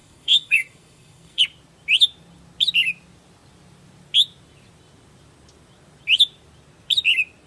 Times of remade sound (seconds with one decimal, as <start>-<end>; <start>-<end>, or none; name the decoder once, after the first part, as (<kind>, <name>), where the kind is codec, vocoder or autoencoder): 0.0-1.4 (codec, SNAC)